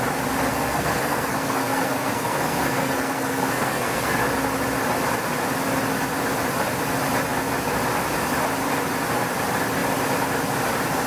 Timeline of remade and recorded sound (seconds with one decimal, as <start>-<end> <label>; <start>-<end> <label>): 0.0-0.5 recorded; 0.5-4.2 remade; 4.2-11.1 recorded